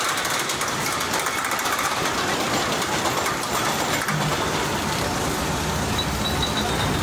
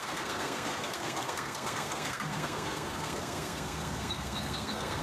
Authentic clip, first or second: first